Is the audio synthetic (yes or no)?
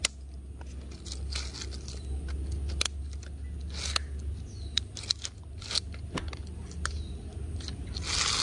no